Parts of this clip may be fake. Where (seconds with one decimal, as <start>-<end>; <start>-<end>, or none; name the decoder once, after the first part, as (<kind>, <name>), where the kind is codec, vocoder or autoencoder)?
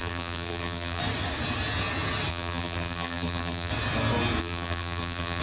0.0-1.0 (vocoder, BigVGAN v2); 2.3-3.7; 4.4-5.4